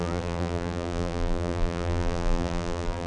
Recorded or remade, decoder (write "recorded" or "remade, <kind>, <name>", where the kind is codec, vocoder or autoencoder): remade, vocoder, BigVGAN v2